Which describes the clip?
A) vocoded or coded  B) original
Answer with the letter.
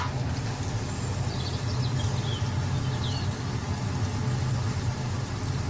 B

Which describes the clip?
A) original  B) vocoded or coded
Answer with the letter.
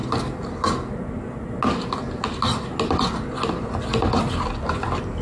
A